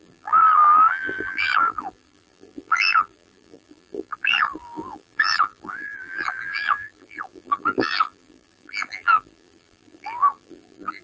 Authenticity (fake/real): fake